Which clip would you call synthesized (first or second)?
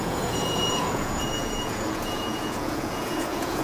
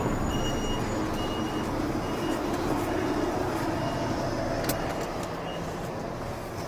first